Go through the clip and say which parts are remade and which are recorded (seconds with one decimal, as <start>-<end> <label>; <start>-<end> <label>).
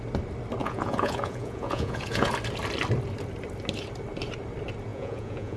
0.0-0.6 recorded; 0.6-2.3 remade; 2.3-4.9 recorded; 4.9-5.6 remade